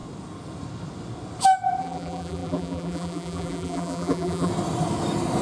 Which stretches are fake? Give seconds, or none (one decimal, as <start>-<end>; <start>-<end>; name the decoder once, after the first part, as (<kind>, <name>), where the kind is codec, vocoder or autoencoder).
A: 1.8-4.5 (vocoder, BigVGAN v2)